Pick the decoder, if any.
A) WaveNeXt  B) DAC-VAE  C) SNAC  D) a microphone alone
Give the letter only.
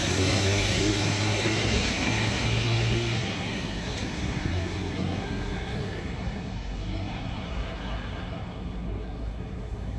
C